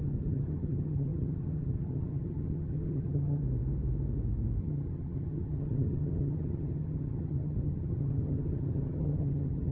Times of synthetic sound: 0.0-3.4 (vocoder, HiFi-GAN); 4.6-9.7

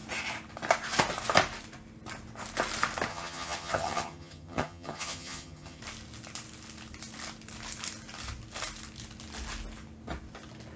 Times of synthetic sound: 3.1-5.8 (vocoder, HiFi-GAN)

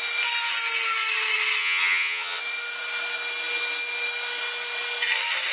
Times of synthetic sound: 1.6-2.4 (vocoder, HiFi-GAN)

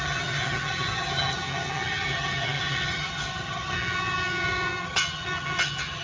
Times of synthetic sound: 0.0-6.0 (vocoder, HiFi-GAN)

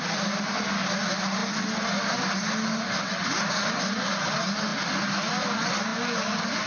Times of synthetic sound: none

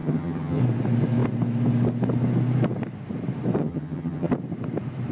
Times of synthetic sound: 0.0-0.6 (vocoder, HiFi-GAN); 3.6-4.3